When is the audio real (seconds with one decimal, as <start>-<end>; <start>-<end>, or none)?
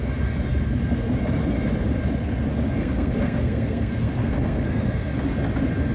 0.0-2.8; 5.1-5.9